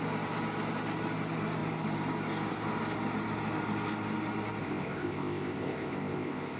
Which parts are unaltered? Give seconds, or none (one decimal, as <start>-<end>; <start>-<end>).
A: 0.0-4.6

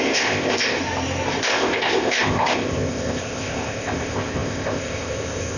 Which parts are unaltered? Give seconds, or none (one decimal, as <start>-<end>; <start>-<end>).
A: 0.8-1.4

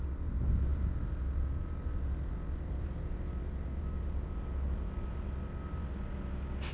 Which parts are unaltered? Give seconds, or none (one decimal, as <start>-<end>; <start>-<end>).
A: 0.0-6.7

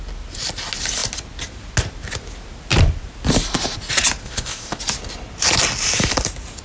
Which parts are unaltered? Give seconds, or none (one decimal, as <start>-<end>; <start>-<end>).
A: 0.0-4.2; 4.8-6.6

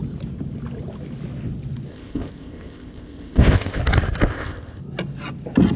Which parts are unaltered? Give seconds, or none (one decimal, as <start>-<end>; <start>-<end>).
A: 0.0-1.9; 3.8-4.3; 4.8-5.8

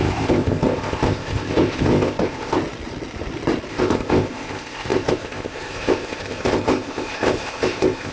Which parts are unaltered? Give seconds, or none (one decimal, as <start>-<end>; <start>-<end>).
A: 2.6-3.7